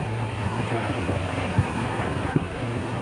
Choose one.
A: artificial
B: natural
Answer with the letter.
A